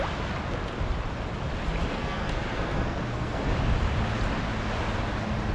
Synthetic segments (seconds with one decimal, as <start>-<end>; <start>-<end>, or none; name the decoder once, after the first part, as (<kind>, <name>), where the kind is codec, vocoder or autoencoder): 1.9-3.4 (codec, SNAC)